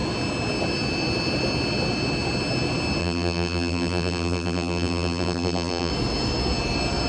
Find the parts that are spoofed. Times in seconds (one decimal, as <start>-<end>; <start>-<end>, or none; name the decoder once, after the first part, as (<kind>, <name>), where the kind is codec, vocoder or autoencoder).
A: 3.0-5.9 (vocoder, BigVGAN v2)